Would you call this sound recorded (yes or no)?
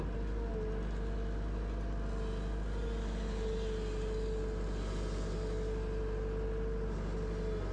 yes